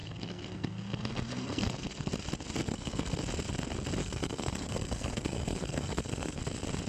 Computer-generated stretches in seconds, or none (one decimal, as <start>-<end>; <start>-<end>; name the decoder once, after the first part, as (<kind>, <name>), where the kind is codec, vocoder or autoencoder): 0.0-2.1 (codec, SNAC); 2.6-3.2; 4.0-6.4